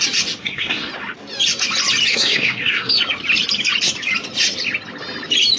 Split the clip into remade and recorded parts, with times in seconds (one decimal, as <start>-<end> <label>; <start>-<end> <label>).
0.0-0.4 recorded; 0.4-0.9 remade; 0.9-2.1 recorded; 2.1-2.9 remade; 2.9-5.6 recorded